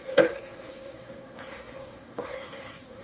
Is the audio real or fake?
fake